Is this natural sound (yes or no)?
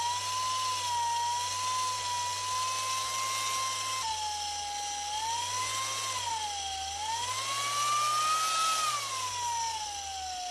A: yes